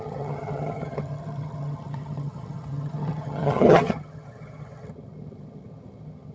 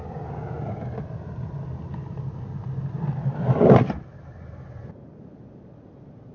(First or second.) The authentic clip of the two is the second